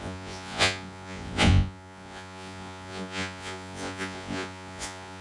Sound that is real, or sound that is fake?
fake